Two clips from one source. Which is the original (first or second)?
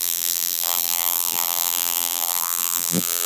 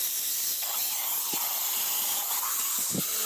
second